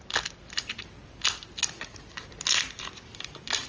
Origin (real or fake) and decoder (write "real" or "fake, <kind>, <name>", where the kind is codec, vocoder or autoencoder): real